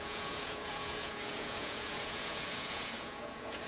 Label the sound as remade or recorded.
remade